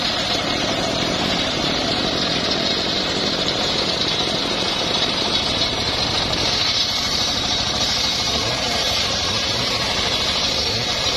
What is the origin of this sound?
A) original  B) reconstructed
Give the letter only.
B